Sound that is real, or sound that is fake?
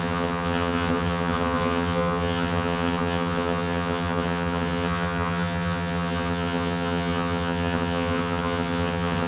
fake